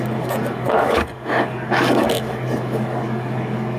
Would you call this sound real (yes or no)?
no